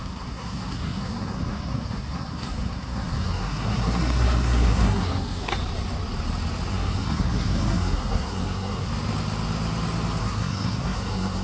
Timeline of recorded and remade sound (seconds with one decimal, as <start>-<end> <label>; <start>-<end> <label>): 0.0-5.5 remade; 5.5-6.7 recorded; 6.7-8.9 remade; 8.9-10.2 recorded; 10.2-11.4 remade